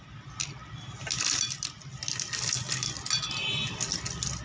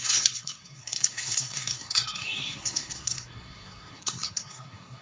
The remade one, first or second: second